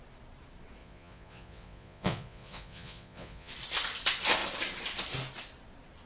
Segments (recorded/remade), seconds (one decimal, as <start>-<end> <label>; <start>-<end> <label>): 0.0-0.8 recorded; 0.8-3.5 remade; 3.5-6.1 recorded